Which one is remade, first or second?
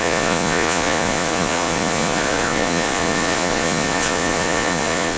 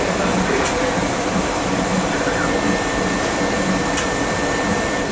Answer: first